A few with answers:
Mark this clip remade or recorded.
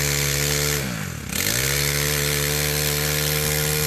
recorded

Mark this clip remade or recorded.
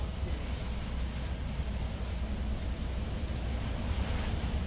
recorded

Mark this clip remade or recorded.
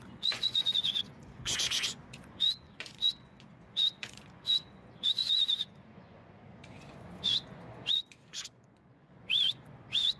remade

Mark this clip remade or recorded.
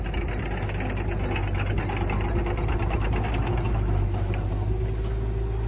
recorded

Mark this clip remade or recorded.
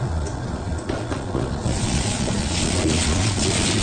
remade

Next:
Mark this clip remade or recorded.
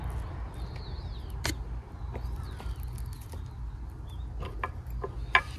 recorded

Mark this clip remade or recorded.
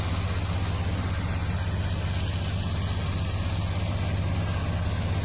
recorded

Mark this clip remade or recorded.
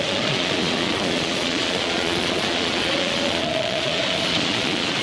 remade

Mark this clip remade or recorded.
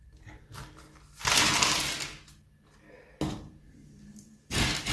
recorded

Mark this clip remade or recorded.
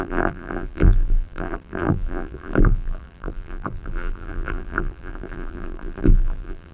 remade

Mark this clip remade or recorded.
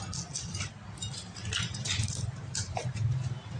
recorded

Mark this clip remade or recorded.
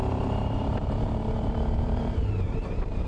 remade